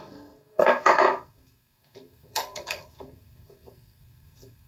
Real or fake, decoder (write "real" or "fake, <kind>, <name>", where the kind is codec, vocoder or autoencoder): fake, codec, SNAC